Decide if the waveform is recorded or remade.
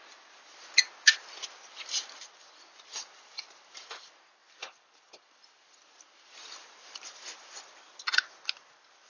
recorded